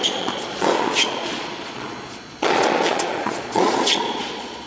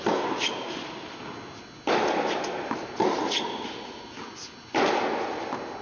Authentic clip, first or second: second